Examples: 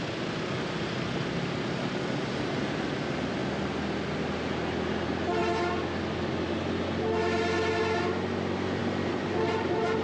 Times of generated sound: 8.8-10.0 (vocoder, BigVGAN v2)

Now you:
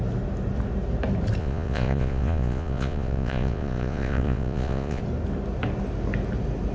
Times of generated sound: 1.4-5.0 (vocoder, Vocos)

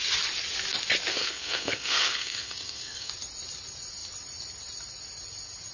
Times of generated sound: 1.1-3.1 (codec, SNAC)

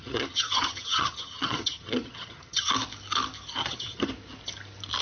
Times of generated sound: 0.0-2.7 (vocoder, HiFi-GAN); 3.6-4.1